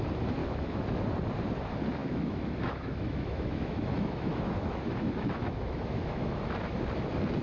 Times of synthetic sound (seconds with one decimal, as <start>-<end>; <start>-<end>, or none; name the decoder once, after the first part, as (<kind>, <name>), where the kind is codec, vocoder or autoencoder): 0.4-1.0 (autoencoder, DAC-VAE); 2.0-6.4